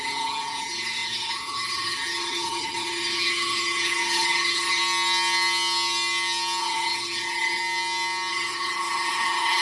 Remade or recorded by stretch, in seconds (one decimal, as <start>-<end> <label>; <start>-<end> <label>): 0.0-4.8 remade; 4.8-6.6 recorded; 6.6-7.6 remade; 7.6-8.3 recorded; 8.3-9.6 remade